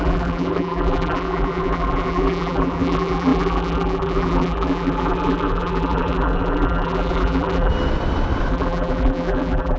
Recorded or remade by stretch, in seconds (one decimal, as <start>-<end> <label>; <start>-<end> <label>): 0.0-7.7 remade; 7.7-8.5 recorded; 8.5-9.8 remade